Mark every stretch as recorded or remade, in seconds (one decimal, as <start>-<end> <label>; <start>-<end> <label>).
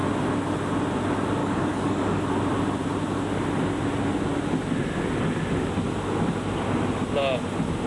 0.0-1.4 recorded; 1.4-2.2 remade; 2.2-7.9 recorded